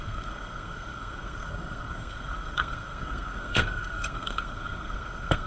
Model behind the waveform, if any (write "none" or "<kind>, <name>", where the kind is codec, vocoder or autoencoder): codec, SNAC